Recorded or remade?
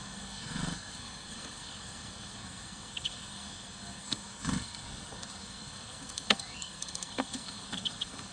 remade